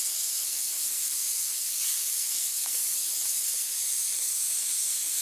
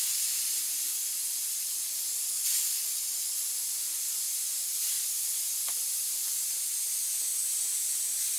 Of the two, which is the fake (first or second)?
first